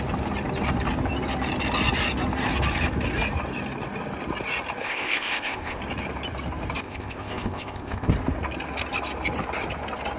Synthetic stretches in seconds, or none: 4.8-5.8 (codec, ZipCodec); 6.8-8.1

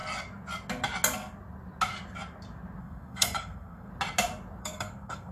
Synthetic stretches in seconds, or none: 2.8-3.9 (codec, SNAC); 4.6-5.3

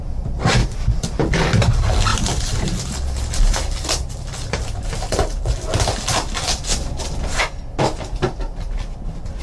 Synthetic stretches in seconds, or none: 2.1-2.8 (vocoder, BigVGAN v2)

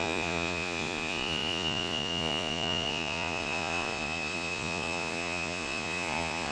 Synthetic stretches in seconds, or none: 0.0-6.5 (vocoder, Vocos)

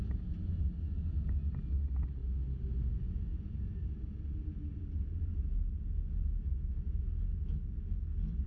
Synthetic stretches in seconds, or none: none